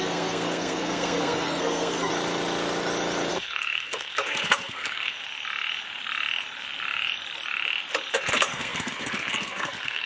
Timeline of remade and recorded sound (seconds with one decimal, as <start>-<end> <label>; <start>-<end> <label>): 0.0-2.1 remade; 2.1-3.3 recorded; 3.3-5.2 remade; 5.2-8.1 recorded; 8.1-10.1 remade